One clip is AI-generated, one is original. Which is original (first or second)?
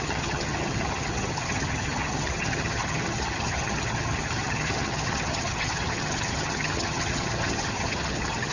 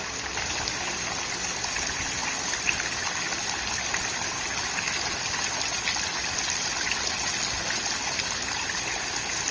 second